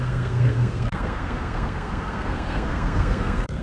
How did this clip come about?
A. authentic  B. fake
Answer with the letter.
B